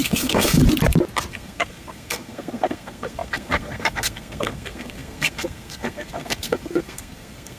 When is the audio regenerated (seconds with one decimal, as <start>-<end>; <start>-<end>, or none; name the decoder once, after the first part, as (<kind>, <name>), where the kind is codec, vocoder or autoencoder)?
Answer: 0.0-0.6 (codec, SNAC); 1.3-7.6